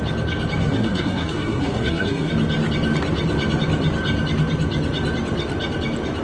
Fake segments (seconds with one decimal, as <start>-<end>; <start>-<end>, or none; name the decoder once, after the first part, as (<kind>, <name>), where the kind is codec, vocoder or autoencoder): 0.6-2.3 (codec, SNAC)